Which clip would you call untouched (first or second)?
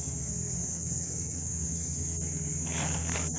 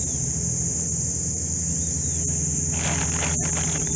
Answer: second